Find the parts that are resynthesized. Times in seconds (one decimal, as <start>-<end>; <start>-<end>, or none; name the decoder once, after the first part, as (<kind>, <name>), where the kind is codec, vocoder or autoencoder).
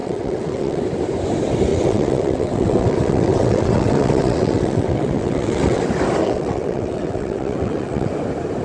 0.0-0.8 (vocoder, WaveNeXt); 1.7-5.8; 6.2-8.1